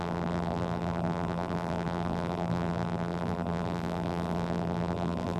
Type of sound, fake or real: fake